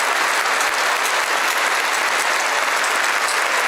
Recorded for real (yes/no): yes